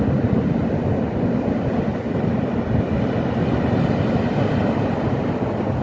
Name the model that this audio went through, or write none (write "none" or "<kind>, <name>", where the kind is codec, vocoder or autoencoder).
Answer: none